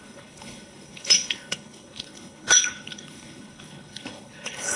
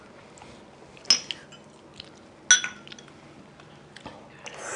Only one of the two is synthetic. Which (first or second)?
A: first